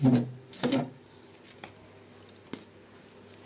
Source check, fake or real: real